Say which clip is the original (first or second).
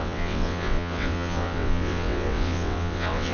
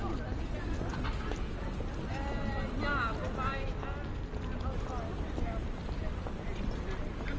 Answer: second